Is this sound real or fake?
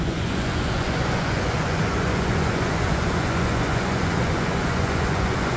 fake